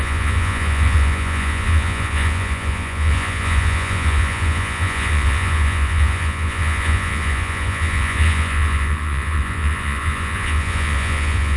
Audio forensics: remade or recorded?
remade